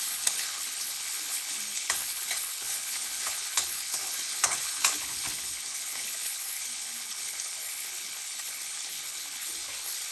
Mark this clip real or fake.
fake